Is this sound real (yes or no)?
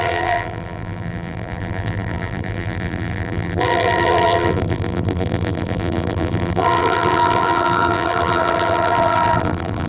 no